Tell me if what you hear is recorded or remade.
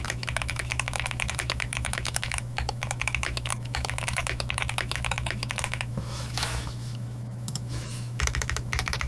remade